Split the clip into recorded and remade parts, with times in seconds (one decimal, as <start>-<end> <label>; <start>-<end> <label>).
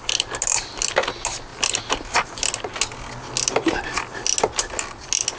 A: 0.0-5.4 recorded